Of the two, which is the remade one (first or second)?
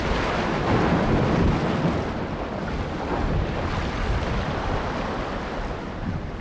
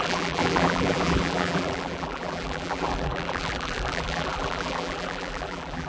second